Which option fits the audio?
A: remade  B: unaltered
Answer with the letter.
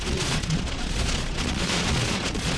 A